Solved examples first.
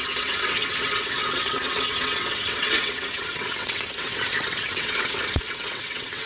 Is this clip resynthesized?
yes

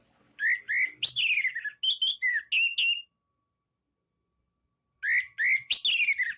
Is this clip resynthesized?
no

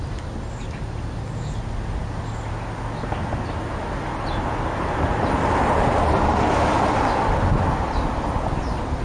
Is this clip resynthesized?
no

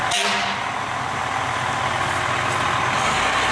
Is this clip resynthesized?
no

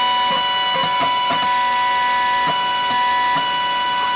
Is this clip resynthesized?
no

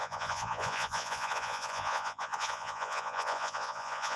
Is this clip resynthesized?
yes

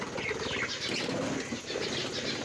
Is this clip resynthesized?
no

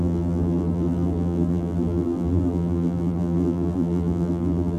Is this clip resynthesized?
yes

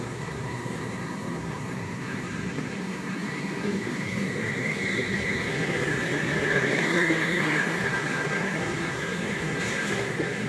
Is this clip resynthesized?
yes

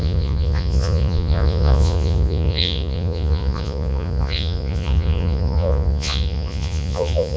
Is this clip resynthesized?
yes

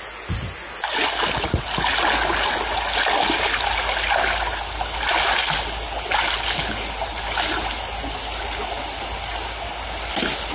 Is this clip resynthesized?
no